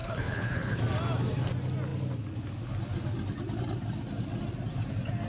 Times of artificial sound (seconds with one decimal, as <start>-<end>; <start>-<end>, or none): 0.0-0.8